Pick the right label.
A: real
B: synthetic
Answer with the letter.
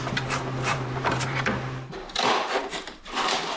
B